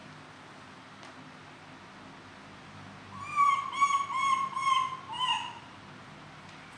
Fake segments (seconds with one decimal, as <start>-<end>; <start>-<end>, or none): none